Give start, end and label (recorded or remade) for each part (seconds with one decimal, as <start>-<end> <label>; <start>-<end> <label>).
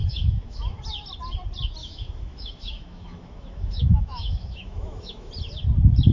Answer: 0.0-0.8 remade; 0.8-1.8 recorded; 1.8-5.3 remade; 5.3-6.1 recorded